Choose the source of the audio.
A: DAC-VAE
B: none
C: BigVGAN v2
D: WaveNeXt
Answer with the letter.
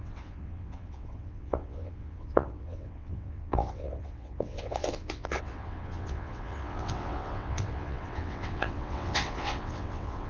D